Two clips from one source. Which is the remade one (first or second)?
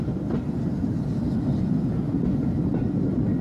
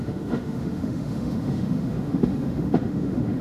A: second